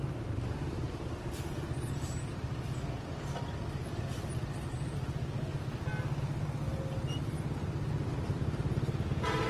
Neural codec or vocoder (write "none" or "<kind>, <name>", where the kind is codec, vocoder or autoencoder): none